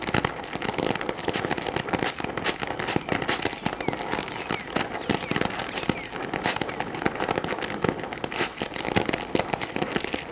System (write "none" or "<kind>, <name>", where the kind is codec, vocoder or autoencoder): none